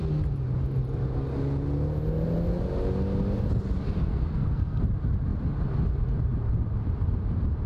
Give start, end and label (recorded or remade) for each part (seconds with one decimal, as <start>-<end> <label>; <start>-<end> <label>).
0.0-4.1 recorded; 4.1-4.8 remade; 4.8-7.7 recorded

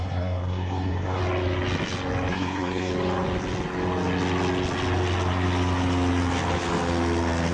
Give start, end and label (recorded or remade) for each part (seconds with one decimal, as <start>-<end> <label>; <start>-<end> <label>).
0.0-1.2 remade; 1.2-2.3 recorded; 2.3-2.9 remade; 2.9-7.5 recorded

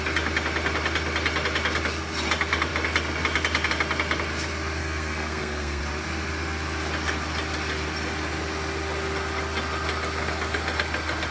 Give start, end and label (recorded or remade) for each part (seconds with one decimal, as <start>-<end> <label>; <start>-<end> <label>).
0.0-4.8 recorded; 4.8-5.8 remade; 5.8-11.3 recorded

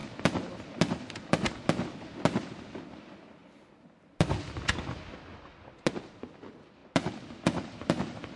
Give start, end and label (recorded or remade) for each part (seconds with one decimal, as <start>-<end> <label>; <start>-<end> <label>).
0.0-8.4 recorded

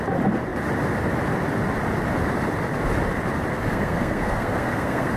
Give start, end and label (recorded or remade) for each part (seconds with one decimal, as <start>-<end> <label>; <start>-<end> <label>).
0.0-3.5 recorded; 3.5-5.2 remade

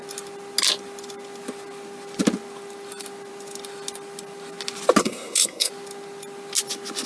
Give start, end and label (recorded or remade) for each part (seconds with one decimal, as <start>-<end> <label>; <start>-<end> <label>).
0.0-5.0 recorded; 5.0-5.7 remade; 5.7-7.1 recorded

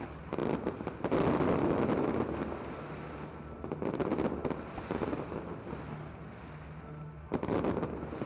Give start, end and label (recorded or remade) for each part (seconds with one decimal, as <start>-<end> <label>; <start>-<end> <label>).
0.0-8.3 recorded